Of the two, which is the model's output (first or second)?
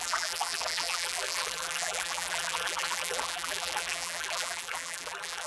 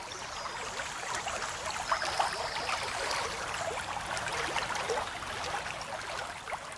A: first